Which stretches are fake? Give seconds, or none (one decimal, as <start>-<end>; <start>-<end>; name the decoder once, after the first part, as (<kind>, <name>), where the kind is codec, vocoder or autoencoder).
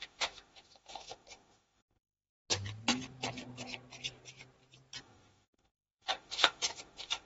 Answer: 0.0-2.3 (autoencoder, DAC-VAE); 5.0-7.3